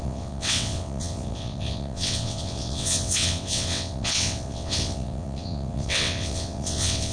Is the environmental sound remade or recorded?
remade